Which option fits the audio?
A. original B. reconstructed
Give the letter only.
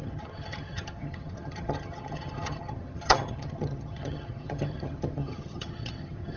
B